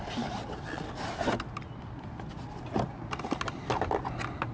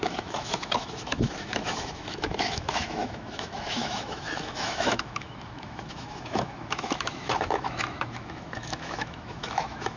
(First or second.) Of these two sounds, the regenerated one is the second